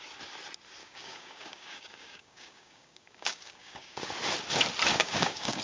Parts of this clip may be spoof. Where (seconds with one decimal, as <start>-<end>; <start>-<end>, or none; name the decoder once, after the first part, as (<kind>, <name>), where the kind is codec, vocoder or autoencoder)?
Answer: 0.8-4.1 (codec, DAC); 4.9-5.6